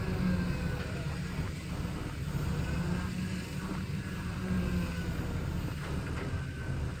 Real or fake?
real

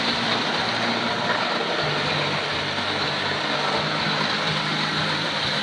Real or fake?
fake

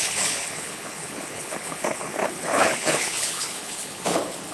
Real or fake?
fake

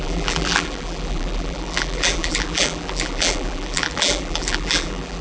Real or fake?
fake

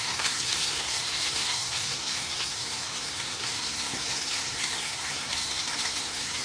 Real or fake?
fake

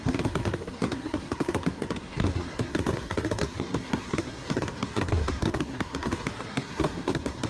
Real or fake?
fake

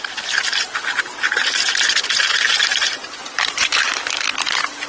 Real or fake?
fake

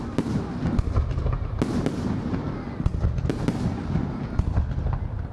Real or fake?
real